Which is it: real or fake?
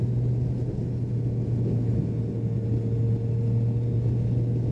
real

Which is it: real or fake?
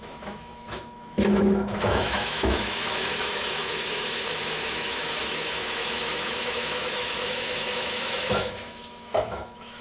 fake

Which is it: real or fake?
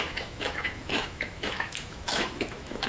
fake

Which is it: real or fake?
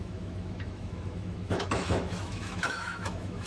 fake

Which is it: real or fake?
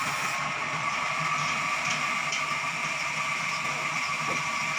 real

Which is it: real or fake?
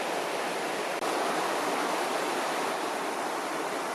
real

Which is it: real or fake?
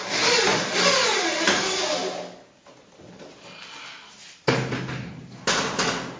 real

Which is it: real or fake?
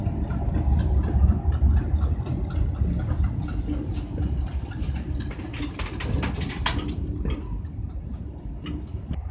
real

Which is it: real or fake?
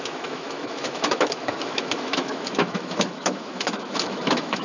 fake